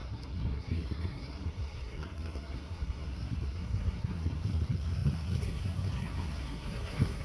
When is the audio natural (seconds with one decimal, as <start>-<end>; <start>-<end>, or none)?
none